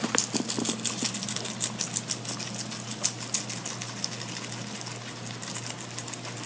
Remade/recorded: recorded